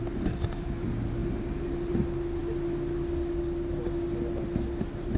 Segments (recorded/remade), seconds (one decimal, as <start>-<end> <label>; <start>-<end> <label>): 0.0-5.2 recorded